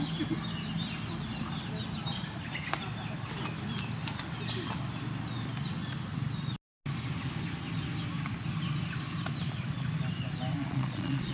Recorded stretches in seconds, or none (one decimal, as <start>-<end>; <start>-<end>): 0.0-10.6